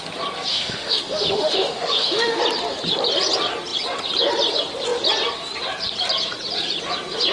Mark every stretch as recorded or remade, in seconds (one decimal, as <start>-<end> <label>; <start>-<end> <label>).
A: 0.0-0.5 recorded; 0.5-2.4 remade; 2.4-7.3 recorded